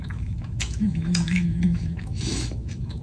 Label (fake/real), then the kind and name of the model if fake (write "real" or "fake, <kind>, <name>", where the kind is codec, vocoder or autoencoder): fake, autoencoder, DAC-VAE